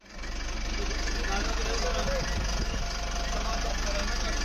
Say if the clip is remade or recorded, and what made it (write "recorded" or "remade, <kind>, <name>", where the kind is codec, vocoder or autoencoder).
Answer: recorded